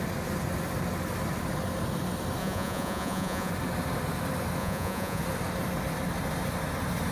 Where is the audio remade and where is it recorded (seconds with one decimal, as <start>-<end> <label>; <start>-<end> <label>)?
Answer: 0.0-2.4 recorded; 2.4-3.5 remade; 3.5-4.6 recorded; 4.6-5.2 remade; 5.2-7.1 recorded